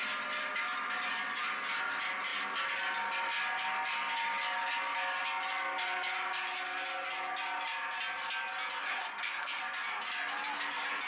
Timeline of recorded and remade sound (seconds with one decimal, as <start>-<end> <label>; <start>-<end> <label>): 0.0-8.8 recorded; 8.8-9.6 remade; 9.6-11.1 recorded

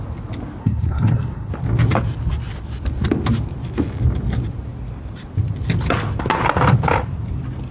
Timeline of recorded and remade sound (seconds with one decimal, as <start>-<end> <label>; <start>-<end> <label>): 0.0-0.6 recorded; 0.6-1.5 remade; 1.5-7.7 recorded

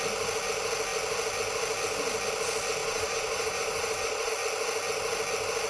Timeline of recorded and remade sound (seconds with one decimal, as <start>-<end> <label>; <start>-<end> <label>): 0.0-2.8 recorded; 2.8-4.3 remade; 4.3-5.7 recorded

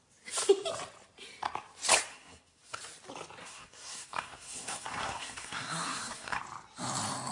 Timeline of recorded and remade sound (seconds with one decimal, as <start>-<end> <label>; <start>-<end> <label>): 0.0-2.1 recorded; 2.1-2.8 remade; 2.8-3.4 recorded; 3.4-6.4 remade; 6.4-7.3 recorded

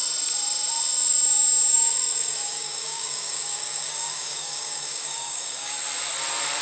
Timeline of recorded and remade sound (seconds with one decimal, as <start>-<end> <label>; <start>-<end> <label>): 0.0-1.7 recorded; 1.7-5.7 remade; 5.7-6.6 recorded

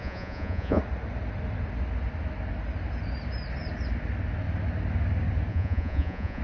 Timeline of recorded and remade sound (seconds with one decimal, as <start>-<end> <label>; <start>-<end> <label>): 0.0-0.8 remade; 0.8-5.5 recorded; 5.5-6.4 remade

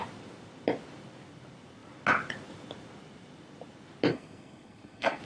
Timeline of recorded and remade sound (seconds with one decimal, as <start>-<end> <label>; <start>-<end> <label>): 0.0-4.1 recorded; 4.1-5.2 remade

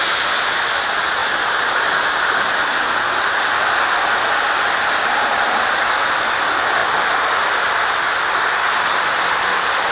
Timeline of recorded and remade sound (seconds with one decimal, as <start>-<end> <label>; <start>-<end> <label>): 0.0-1.2 remade; 1.2-4.7 recorded; 4.7-6.8 remade; 6.8-8.5 recorded; 8.5-9.9 remade